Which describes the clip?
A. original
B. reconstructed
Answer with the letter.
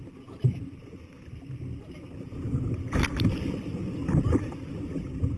A